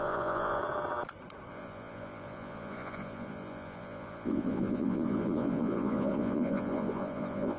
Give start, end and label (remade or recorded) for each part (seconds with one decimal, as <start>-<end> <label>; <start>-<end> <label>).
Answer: 0.0-0.6 remade; 0.6-1.5 recorded; 1.5-7.6 remade